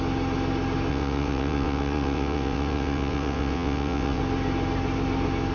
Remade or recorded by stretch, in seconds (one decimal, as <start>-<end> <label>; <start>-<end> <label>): 0.0-0.9 recorded; 0.9-4.2 remade; 4.2-5.5 recorded